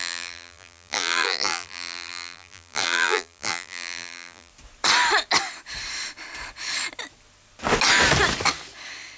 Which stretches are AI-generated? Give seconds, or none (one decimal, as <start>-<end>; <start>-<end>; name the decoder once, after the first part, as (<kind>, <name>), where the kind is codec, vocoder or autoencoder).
0.0-4.5 (vocoder, BigVGAN v2)